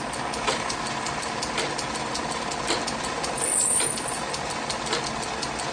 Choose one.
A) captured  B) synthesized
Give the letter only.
A